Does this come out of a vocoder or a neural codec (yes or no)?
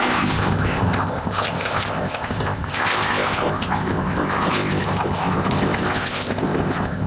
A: yes